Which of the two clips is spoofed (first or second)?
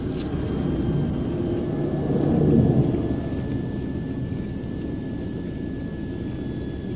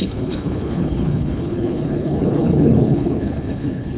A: second